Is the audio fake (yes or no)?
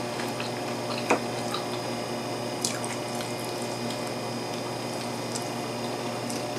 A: no